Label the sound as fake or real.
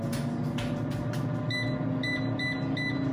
real